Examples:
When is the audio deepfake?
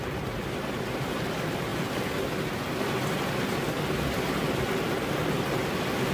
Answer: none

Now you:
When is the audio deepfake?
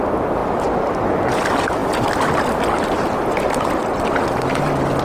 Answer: none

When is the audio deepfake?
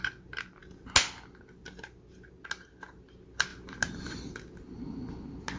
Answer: none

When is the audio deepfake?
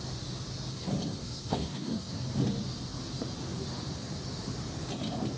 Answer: 0.7-2.3 (codec, SNAC)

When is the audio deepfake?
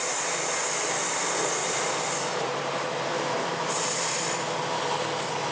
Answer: 1.6-4.9 (vocoder, BigVGAN v2)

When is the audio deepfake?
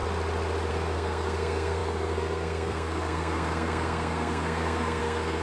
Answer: 0.7-5.4 (codec, SNAC)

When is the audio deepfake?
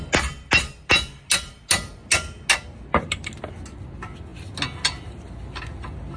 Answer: none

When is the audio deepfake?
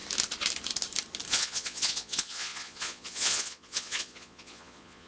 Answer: 1.3-5.1 (vocoder, Vocos)